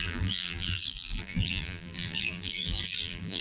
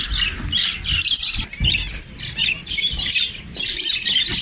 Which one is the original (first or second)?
second